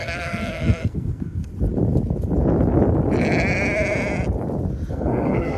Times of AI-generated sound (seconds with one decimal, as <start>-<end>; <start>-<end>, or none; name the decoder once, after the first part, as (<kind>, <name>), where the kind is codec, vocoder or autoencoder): 0.0-1.5 (codec, SNAC); 4.9-5.6

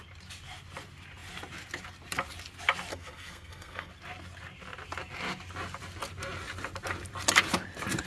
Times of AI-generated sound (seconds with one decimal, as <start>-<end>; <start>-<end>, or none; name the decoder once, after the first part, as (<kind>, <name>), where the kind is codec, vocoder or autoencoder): 2.9-3.9 (codec, SNAC)

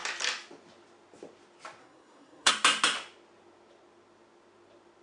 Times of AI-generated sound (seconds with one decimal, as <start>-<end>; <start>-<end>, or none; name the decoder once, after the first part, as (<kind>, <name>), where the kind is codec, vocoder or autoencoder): 1.8-2.5 (codec, SNAC)

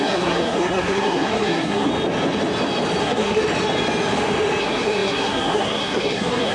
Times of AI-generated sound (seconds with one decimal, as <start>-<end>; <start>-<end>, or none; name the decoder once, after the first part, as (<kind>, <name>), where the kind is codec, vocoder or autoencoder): 0.0-1.9 (codec, SNAC); 3.0-3.4; 4.6-6.5

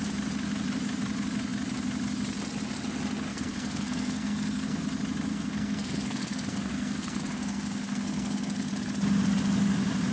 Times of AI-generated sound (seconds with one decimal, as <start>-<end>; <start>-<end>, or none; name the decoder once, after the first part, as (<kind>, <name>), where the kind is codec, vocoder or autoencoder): 3.3-4.8 (codec, SNAC); 5.3-8.7